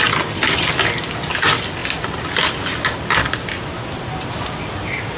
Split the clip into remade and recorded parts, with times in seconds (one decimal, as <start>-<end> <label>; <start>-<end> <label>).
0.0-5.2 recorded